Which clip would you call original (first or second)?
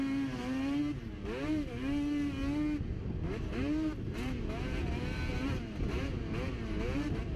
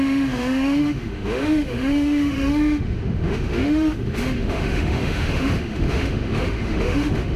first